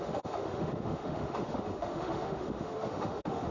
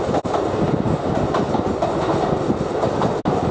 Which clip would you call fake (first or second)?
first